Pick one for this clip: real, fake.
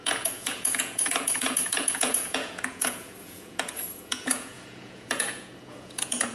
fake